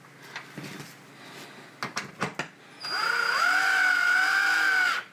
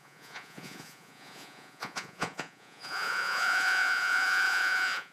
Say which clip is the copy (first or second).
second